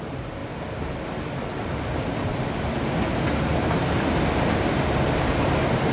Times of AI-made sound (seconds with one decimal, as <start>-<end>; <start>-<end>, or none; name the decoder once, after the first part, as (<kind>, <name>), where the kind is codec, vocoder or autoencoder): 0.0-0.4 (vocoder, BigVGAN v2); 1.3-2.3